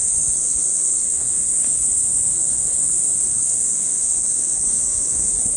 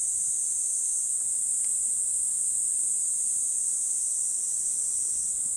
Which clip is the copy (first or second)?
first